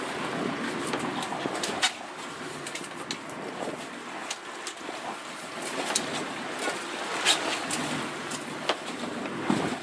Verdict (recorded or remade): recorded